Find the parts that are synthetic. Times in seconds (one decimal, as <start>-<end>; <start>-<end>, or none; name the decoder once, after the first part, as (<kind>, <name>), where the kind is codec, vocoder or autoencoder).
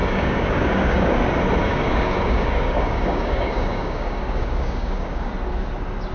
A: 0.0-1.2 (codec, DAC); 1.6-5.3